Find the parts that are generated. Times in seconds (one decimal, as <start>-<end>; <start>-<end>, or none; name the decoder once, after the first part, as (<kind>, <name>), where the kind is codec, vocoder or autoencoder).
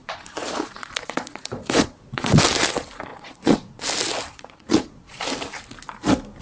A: 0.0-2.4 (vocoder, Vocos); 3.1-3.8; 4.3-5.2